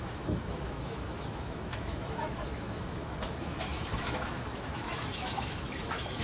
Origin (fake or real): fake